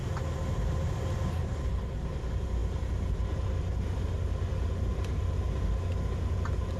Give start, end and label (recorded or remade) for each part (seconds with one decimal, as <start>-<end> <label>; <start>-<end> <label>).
0.0-6.8 recorded